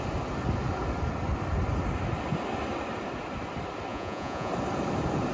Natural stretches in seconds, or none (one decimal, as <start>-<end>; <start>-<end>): 0.0-3.9; 4.5-5.3